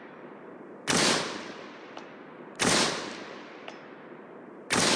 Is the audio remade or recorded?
recorded